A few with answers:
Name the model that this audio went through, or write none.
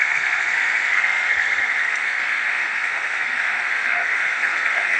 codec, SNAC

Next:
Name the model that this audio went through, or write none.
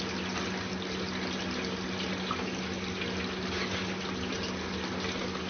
none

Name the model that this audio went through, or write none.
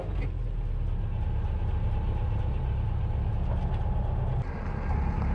none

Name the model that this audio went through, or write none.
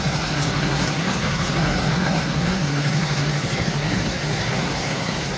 codec, SNAC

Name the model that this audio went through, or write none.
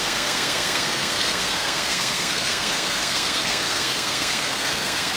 codec, SNAC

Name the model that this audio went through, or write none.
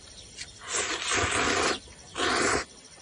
none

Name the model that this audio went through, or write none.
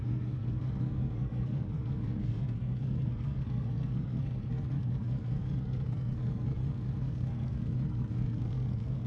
codec, SNAC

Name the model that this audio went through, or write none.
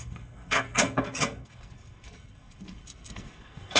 codec, SNAC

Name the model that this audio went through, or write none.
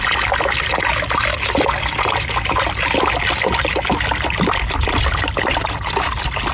none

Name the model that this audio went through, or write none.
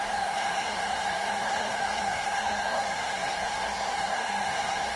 codec, SNAC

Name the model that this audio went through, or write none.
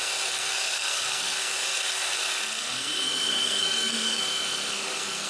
codec, SNAC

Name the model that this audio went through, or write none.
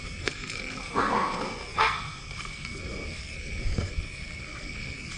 codec, SNAC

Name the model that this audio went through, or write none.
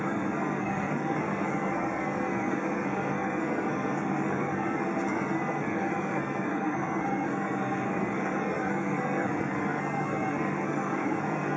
codec, SNAC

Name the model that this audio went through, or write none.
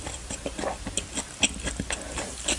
none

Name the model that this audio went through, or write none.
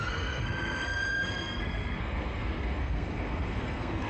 codec, SNAC